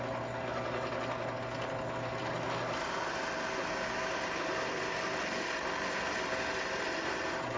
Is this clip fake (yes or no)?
no